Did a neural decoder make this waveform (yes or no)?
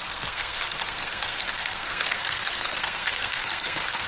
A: yes